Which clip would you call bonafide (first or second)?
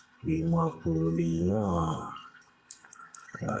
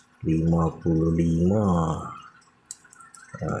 second